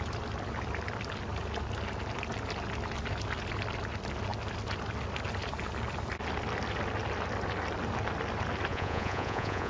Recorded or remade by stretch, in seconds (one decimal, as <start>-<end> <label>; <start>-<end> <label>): 0.0-8.7 recorded; 8.7-9.7 remade